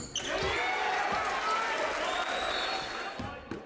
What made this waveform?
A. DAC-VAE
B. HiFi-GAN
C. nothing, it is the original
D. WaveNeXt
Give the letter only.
C